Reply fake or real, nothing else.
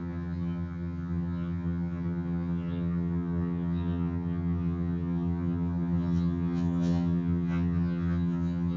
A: fake